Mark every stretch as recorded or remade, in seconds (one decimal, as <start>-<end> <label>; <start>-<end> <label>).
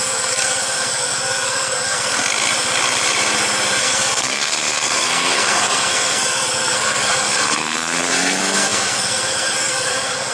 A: 0.0-2.2 remade; 2.2-3.8 recorded; 3.8-10.3 remade